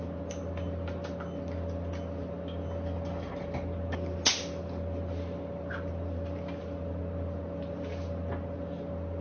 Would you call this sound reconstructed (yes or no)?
no